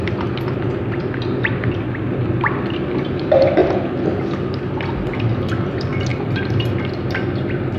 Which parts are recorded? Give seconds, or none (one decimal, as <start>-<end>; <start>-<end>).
0.0-6.1; 6.7-7.8